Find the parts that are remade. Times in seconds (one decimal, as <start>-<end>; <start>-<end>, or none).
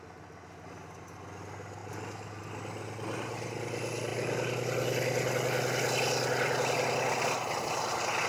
none